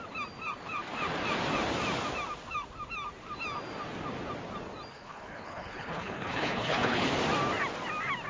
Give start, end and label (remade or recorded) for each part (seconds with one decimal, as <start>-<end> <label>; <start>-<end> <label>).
0.0-4.9 recorded; 4.9-7.1 remade; 7.1-8.3 recorded